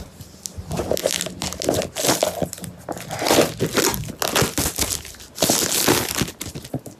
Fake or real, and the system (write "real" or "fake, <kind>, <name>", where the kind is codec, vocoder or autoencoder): real